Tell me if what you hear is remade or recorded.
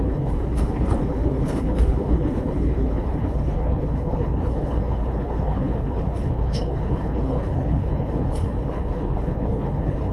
remade